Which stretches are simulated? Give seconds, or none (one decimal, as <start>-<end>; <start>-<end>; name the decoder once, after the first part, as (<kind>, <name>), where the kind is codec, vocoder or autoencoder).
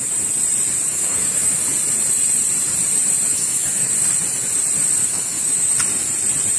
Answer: 0.9-1.6 (autoencoder, DAC-VAE); 3.3-3.9; 5.0-5.7